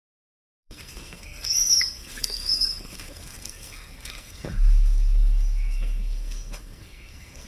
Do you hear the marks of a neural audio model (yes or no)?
yes